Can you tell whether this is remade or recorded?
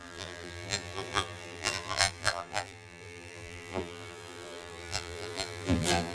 remade